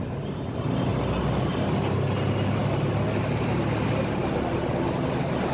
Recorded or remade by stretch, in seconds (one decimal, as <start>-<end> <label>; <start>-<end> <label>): 0.0-5.5 recorded